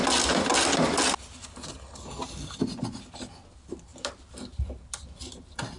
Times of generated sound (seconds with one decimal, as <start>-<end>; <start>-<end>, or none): 3.9-5.8